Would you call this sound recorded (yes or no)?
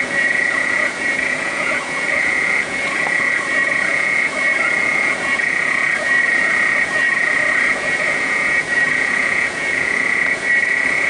no